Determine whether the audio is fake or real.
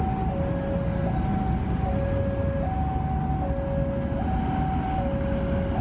real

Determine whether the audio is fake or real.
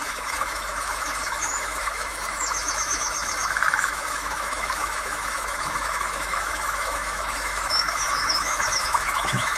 fake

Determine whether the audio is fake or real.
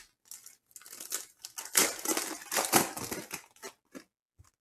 real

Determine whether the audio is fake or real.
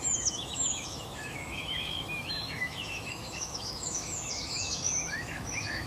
fake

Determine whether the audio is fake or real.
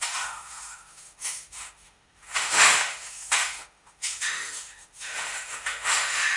fake